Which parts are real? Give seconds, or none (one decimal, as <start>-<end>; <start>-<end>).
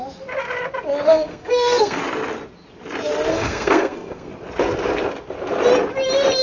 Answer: 0.0-1.1; 2.0-3.3; 4.3-6.4